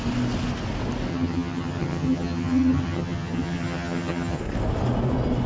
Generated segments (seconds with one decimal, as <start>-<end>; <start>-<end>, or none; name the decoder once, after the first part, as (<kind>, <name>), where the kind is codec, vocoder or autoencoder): 1.1-4.4 (vocoder, HiFi-GAN)